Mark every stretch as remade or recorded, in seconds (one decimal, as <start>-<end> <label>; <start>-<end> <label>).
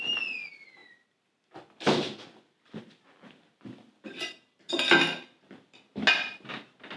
0.0-7.0 recorded